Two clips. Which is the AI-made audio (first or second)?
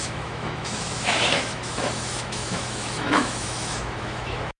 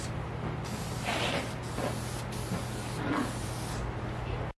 first